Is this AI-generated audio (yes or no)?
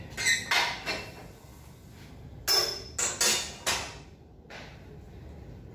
no